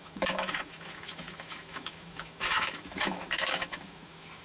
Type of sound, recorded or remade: remade